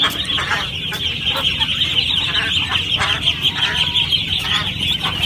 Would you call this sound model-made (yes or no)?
no